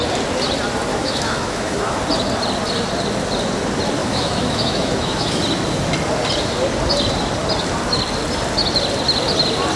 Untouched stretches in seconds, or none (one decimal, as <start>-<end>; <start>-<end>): 0.0-0.9; 2.0-4.0; 5.4-9.8

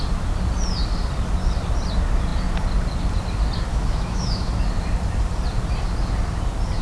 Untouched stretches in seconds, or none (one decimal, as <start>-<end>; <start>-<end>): 0.0-3.7; 4.5-6.8